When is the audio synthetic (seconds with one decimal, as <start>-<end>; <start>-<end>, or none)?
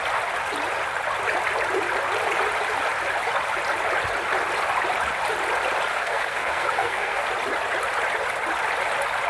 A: 5.9-7.3